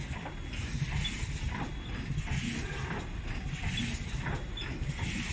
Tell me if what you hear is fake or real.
real